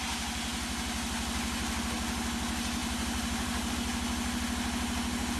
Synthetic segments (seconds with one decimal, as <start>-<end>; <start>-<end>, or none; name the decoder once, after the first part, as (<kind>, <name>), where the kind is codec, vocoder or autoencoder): 2.8-3.7 (vocoder, BigVGAN v2)